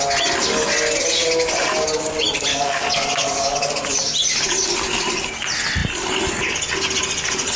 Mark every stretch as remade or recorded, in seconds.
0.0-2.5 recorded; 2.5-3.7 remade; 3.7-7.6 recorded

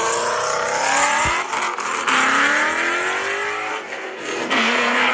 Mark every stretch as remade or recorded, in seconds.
0.0-3.7 recorded; 3.7-5.1 remade

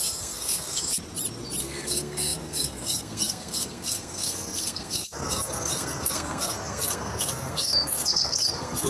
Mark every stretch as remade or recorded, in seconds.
0.0-1.0 remade; 1.0-1.6 recorded; 1.6-8.9 remade

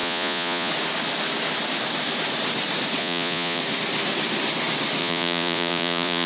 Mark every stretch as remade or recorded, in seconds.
0.0-0.7 remade; 0.7-3.0 recorded; 3.0-3.6 remade; 3.6-5.0 recorded; 5.0-6.3 remade

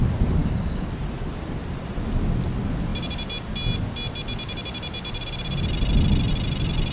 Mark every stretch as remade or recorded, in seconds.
0.0-0.4 recorded; 0.4-0.9 remade; 0.9-6.9 recorded

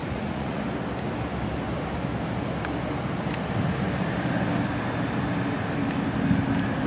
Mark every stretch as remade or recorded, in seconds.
0.0-0.6 remade; 0.6-6.9 recorded

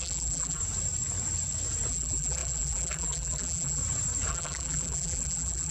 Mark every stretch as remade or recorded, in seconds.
0.0-0.6 remade; 0.6-1.9 recorded; 1.9-3.8 remade; 3.8-4.3 recorded; 4.3-5.7 remade

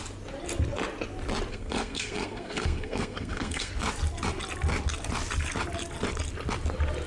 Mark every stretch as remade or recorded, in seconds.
0.0-1.5 recorded; 1.5-3.7 remade; 3.7-7.1 recorded